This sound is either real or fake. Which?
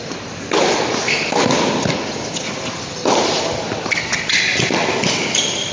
real